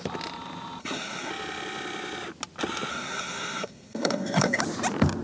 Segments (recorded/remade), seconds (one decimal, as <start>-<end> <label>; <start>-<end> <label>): 0.0-0.8 recorded; 0.8-1.3 remade; 1.3-2.9 recorded; 2.9-4.6 remade; 4.6-5.2 recorded